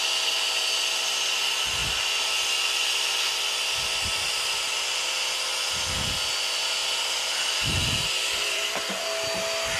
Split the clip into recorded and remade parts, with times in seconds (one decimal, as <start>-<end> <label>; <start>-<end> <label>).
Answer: 0.0-6.8 recorded; 6.8-8.9 remade; 8.9-9.8 recorded